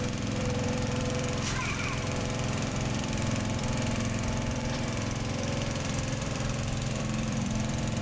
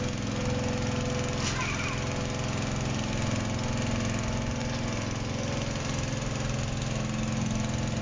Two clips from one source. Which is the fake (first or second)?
first